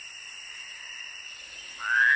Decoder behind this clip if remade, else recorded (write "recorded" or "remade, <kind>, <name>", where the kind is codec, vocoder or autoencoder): remade, vocoder, BigVGAN v2